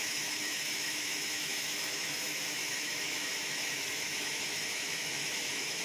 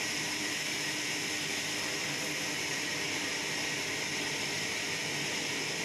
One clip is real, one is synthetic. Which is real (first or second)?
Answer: second